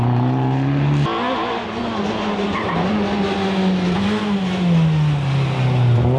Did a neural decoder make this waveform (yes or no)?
no